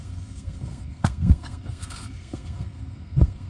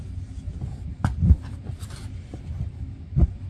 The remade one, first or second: first